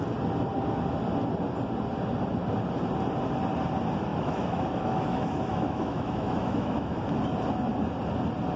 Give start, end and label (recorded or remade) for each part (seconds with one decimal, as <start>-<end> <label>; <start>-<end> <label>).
0.0-4.1 recorded; 4.1-7.0 remade; 7.0-8.6 recorded